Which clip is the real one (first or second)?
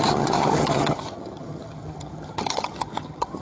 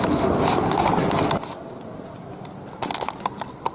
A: second